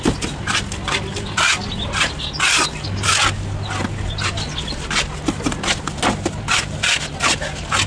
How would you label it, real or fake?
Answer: real